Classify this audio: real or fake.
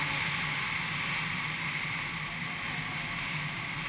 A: real